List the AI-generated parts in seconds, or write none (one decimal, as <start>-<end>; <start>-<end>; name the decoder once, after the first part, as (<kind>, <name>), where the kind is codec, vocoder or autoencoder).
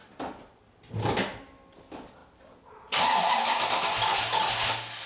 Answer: none